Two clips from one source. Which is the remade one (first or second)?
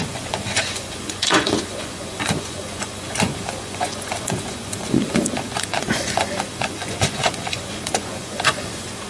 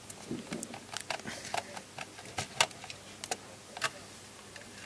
first